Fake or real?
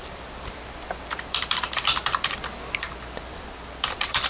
fake